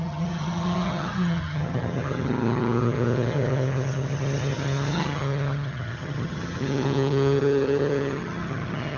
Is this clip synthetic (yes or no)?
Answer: yes